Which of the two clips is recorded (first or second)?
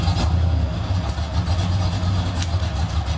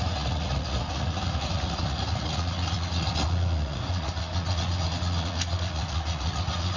first